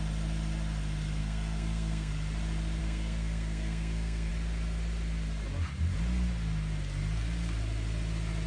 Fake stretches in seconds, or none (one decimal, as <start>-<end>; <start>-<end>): 1.2-2.1; 2.8-4.3